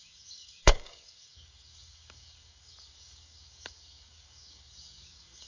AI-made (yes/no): yes